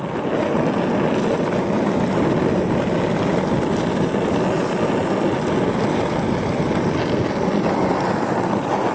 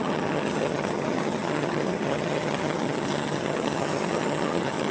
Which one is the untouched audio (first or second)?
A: first